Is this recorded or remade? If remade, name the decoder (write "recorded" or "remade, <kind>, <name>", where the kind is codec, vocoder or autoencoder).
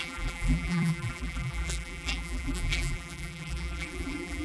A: remade, vocoder, BigVGAN v2